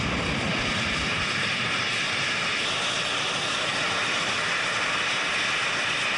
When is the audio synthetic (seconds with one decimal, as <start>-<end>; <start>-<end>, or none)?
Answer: none